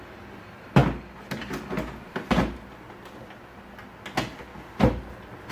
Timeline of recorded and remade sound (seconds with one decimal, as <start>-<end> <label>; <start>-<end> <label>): 0.0-5.5 recorded